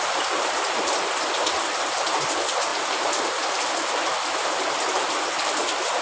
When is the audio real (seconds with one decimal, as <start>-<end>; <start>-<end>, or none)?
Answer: none